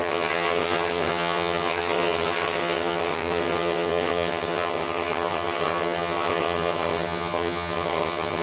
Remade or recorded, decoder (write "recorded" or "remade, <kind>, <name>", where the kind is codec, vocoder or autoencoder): remade, vocoder, HiFi-GAN